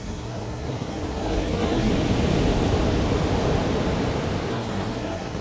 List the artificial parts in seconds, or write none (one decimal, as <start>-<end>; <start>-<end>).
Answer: 0.0-1.9; 4.5-5.4